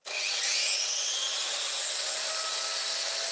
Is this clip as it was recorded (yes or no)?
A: yes